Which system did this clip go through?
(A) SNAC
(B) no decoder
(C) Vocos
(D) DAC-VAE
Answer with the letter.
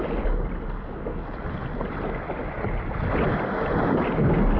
B